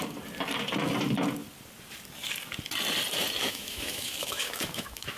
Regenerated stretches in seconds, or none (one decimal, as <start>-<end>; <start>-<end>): 3.4-5.2